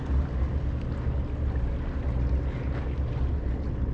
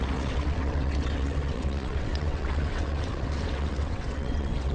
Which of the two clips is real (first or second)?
first